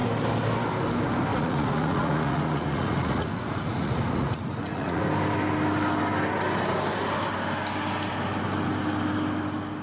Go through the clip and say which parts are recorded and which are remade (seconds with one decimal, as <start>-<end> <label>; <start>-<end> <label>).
0.0-1.3 recorded; 1.3-5.0 remade; 5.0-9.8 recorded